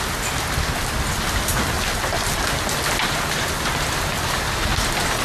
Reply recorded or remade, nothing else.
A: recorded